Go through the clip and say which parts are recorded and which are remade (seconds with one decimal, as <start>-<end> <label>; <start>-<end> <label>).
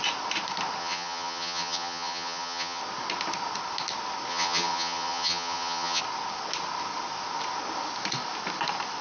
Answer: 0.0-0.8 recorded; 0.8-2.8 remade; 2.8-4.3 recorded; 4.3-6.0 remade; 6.0-9.0 recorded